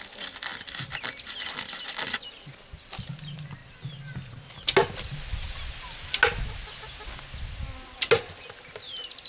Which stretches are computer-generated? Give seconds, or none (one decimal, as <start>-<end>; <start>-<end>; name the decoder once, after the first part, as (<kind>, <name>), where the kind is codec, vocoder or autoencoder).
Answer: none